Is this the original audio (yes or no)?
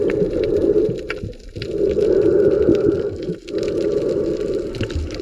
yes